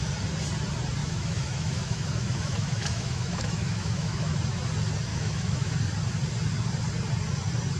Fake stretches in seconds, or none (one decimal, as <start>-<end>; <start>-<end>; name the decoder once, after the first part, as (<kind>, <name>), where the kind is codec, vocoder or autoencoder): 1.0-4.4 (autoencoder, DAC-VAE); 5.1-5.7